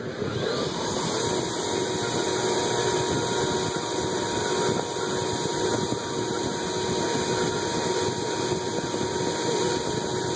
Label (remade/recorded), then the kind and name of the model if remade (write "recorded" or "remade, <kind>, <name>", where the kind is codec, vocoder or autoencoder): recorded